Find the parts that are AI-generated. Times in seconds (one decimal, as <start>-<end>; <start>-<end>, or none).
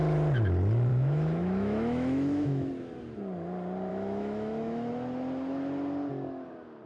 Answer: 0.9-2.7; 3.9-4.9